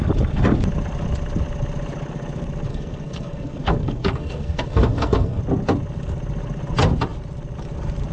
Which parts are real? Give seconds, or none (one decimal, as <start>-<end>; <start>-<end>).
0.0-2.7; 5.4-8.1